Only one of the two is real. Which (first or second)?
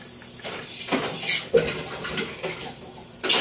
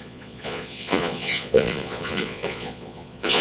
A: first